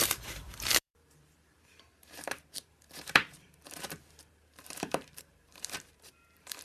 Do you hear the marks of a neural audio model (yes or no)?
yes